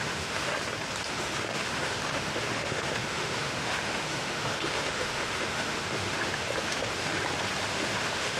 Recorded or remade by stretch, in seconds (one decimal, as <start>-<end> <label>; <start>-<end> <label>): 0.0-0.5 remade; 0.5-1.1 recorded; 1.1-7.1 remade; 7.1-7.7 recorded; 7.7-8.4 remade